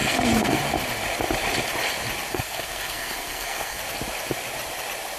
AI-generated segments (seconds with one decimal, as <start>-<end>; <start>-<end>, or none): 0.0-0.6; 2.3-3.8